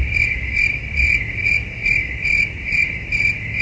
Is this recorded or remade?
remade